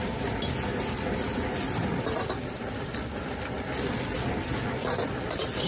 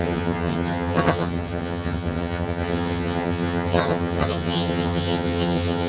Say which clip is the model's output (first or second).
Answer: second